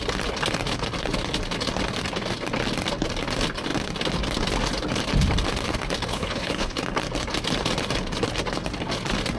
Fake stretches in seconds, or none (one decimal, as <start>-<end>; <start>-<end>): 6.1-6.8